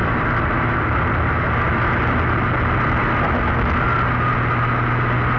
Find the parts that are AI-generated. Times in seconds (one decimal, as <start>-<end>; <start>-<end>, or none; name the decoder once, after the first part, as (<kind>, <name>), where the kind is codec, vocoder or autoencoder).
none